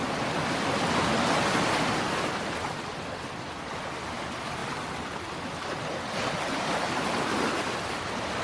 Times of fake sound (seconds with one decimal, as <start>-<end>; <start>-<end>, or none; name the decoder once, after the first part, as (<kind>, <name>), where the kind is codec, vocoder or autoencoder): none